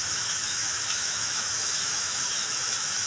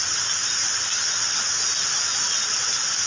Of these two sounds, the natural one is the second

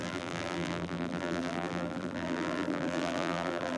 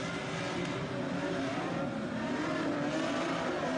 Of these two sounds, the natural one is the second